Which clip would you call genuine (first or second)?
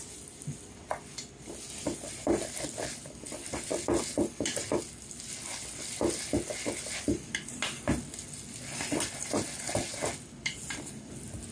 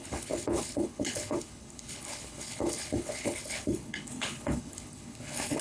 first